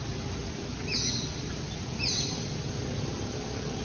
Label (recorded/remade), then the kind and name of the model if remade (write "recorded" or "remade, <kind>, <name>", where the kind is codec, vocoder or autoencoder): recorded